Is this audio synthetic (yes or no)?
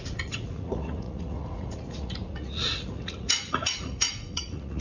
yes